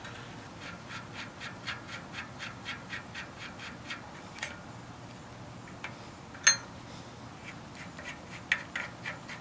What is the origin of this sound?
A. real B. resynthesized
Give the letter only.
A